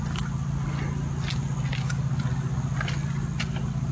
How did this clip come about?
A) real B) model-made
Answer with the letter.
A